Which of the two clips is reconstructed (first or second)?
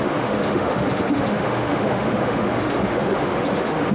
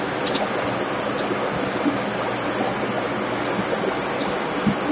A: first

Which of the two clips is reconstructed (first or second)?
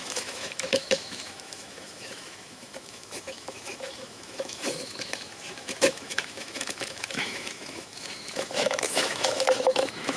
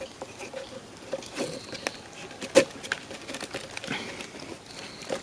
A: first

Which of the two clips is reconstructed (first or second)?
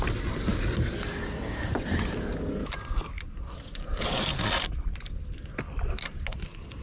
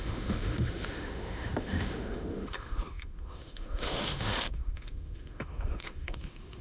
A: second